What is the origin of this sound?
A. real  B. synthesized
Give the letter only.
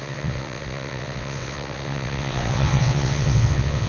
B